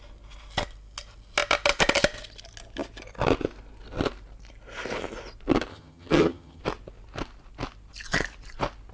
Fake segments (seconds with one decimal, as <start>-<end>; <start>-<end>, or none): 5.7-6.6